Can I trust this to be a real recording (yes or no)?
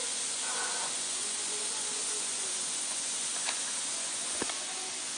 no